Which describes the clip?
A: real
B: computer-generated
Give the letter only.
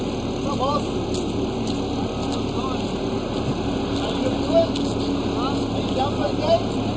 A